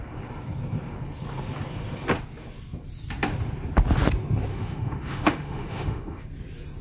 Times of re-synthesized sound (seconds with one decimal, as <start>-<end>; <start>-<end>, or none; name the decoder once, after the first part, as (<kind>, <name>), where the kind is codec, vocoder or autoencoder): 4.5-6.2 (autoencoder, DAC-VAE)